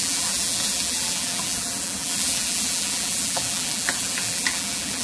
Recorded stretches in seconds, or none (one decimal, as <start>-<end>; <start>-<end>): none